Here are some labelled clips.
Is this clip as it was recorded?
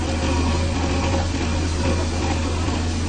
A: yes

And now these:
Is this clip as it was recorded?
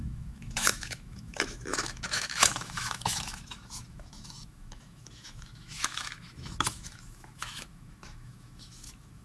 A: no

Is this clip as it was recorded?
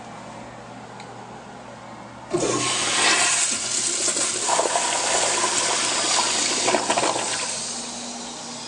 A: yes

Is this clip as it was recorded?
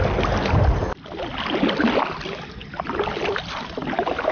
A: yes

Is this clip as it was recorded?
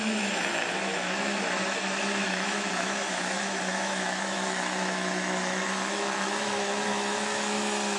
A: no